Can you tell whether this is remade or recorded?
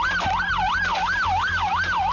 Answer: recorded